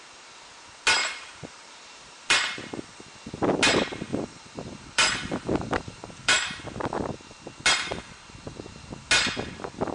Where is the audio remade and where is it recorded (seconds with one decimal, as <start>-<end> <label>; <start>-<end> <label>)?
0.0-1.0 recorded; 1.0-2.7 remade; 2.7-4.1 recorded; 4.1-6.6 remade; 6.6-9.9 recorded